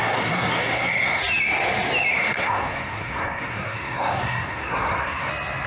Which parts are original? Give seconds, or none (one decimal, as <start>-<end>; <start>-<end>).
1.2-2.1; 5.3-5.7